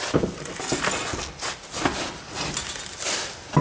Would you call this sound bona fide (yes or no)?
yes